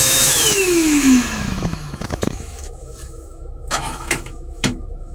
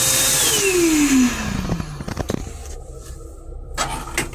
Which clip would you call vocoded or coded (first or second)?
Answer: first